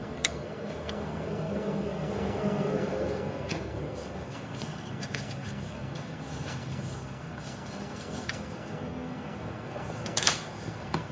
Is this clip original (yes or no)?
no